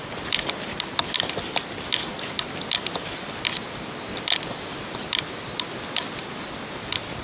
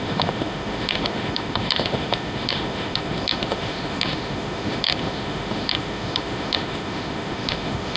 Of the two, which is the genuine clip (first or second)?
first